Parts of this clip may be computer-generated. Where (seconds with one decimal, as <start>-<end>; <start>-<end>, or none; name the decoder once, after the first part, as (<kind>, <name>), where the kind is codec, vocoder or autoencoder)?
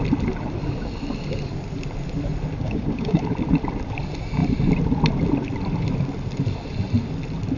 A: 2.6-3.2 (codec, DAC)